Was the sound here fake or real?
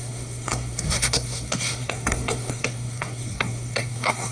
fake